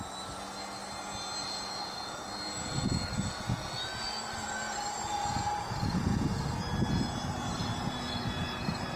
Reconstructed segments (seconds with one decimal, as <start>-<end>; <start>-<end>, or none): 1.4-6.6; 7.6-9.0